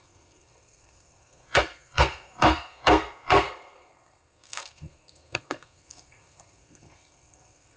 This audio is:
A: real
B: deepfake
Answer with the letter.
B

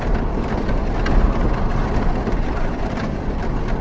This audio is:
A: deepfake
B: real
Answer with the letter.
B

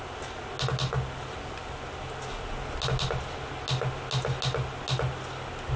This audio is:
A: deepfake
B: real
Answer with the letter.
B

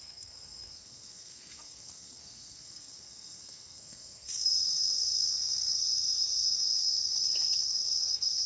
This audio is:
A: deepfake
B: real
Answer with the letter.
A